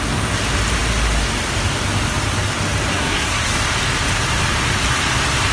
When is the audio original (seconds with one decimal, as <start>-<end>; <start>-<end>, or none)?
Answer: 0.0-2.9; 3.5-5.5